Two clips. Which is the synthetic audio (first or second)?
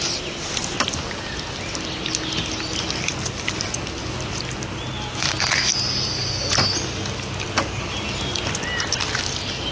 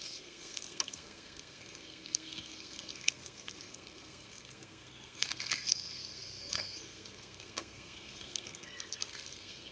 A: second